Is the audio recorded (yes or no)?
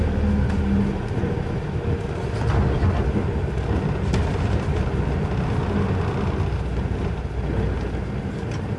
yes